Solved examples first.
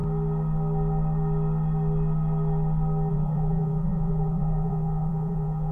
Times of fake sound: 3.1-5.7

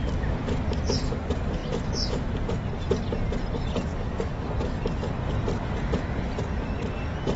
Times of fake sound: 3.9-4.5

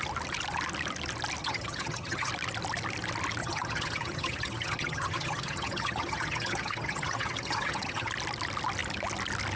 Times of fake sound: 1.4-2.3; 3.4-8.1

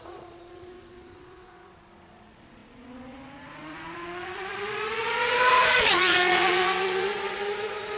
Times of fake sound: 0.0-8.0

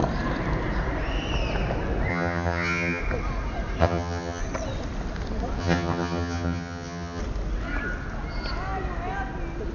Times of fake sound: 2.1-3.0; 3.8-4.4; 5.6-7.2